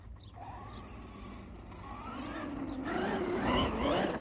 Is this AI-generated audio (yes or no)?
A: no